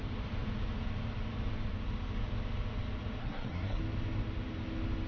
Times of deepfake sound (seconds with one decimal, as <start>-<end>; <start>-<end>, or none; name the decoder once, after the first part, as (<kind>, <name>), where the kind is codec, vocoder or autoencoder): 3.2-3.8 (codec, SNAC)